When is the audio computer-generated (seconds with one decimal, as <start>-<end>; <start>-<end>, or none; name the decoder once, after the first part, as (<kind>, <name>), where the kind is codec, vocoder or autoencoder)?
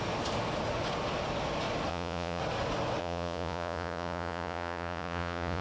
1.9-2.4 (vocoder, Vocos); 3.0-5.6